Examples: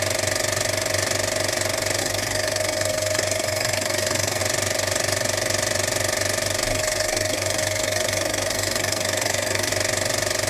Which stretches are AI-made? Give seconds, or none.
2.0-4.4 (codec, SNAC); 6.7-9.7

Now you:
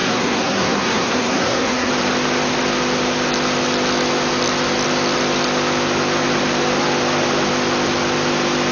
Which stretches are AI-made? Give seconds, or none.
0.0-1.9 (codec, SNAC)

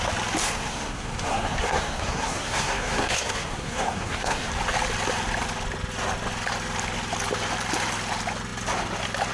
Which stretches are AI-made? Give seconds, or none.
0.4-4.5 (codec, SNAC)

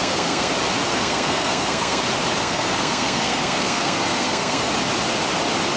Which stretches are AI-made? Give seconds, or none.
0.0-0.5 (codec, SNAC); 0.9-2.0; 2.4-4.7